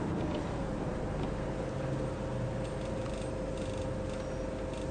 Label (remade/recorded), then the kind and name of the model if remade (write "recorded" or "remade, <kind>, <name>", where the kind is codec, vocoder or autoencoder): recorded